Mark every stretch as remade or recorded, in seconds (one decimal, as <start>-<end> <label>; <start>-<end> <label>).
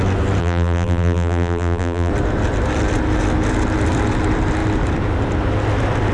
0.0-0.4 recorded; 0.4-2.1 remade; 2.1-6.1 recorded